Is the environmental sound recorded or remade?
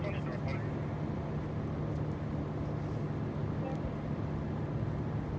recorded